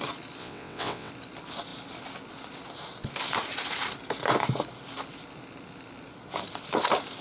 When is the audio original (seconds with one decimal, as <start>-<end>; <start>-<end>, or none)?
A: 0.0-0.4; 1.1-7.2